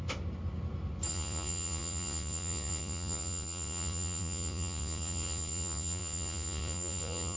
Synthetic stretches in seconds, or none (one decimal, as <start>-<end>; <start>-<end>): 1.1-7.4